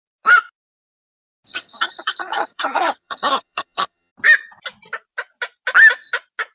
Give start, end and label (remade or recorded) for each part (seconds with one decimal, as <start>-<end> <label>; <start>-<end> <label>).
0.0-1.5 recorded; 1.5-4.1 remade; 4.1-6.5 recorded